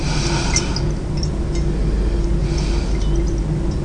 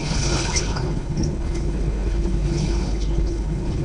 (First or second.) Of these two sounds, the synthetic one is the second